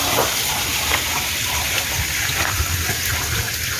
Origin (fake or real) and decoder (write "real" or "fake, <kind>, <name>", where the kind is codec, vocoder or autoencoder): real